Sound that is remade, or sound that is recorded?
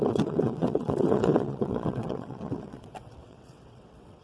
remade